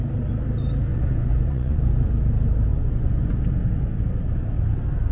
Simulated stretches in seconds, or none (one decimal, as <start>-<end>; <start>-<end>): 0.9-2.1; 2.7-3.4